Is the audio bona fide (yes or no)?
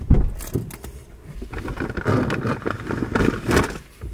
yes